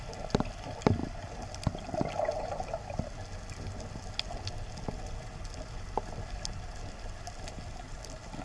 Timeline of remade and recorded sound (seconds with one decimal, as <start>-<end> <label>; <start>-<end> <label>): 0.0-8.4 recorded